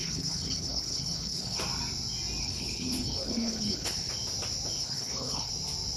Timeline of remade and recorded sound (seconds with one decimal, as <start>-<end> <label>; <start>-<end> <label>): 0.0-1.6 remade; 1.6-2.4 recorded; 2.4-4.1 remade; 4.1-4.8 recorded; 4.8-5.5 remade; 5.5-6.0 recorded